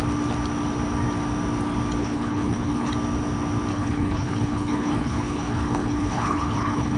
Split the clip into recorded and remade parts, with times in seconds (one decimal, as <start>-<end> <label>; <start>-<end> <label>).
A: 0.0-2.0 recorded; 2.0-2.9 remade; 2.9-3.7 recorded; 3.7-7.0 remade